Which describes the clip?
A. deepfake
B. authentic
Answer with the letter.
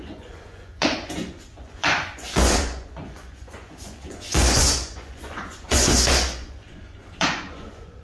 A